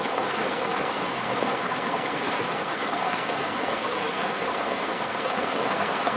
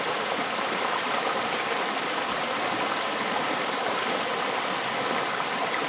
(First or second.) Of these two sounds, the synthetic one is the first